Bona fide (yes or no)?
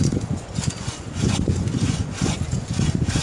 no